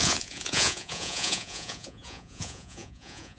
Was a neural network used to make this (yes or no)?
yes